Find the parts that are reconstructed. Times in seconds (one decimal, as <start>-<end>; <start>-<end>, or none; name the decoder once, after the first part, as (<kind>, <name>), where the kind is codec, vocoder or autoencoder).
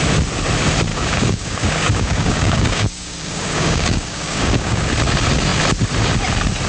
0.9-4.9 (codec, DAC)